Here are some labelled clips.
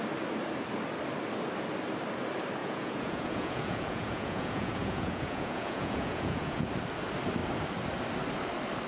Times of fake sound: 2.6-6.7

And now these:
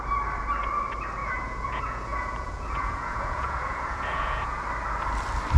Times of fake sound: 1.2-4.6